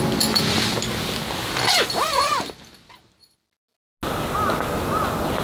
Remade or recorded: recorded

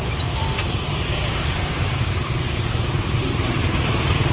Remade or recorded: remade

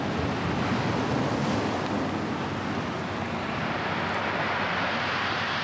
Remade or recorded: recorded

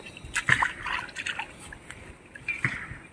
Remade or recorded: recorded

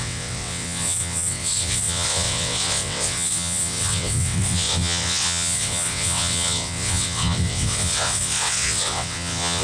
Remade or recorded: remade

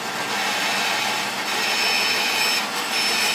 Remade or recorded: recorded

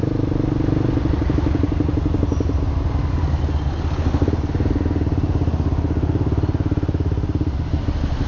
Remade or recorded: recorded